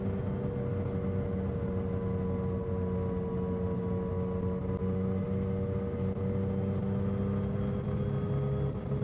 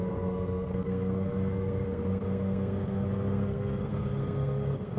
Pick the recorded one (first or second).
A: first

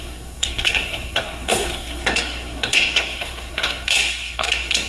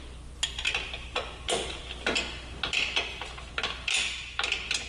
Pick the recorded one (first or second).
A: second